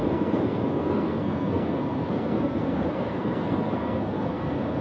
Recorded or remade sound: remade